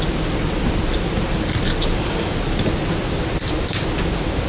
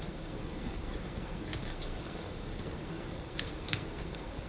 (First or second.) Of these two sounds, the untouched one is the first